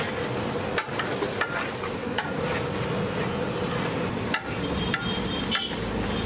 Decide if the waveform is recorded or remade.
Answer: recorded